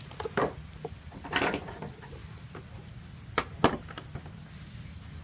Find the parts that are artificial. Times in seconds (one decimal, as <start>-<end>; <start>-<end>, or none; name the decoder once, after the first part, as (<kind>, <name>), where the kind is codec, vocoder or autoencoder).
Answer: none

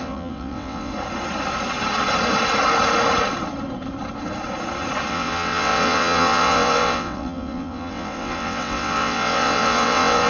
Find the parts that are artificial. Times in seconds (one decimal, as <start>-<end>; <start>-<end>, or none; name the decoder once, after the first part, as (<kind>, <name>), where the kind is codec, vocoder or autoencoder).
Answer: 0.0-0.9 (vocoder, WaveNeXt); 5.1-10.3

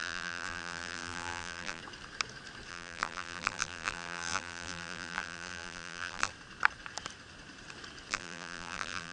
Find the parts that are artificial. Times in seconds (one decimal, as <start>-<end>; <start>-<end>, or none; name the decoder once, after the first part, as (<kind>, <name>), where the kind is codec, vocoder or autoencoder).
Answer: 0.0-1.8 (vocoder, BigVGAN v2); 2.7-6.3; 8.1-9.1

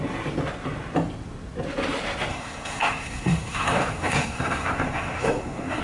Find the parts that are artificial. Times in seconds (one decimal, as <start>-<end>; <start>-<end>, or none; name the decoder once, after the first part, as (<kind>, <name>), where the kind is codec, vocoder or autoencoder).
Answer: 2.3-5.8 (codec, SNAC)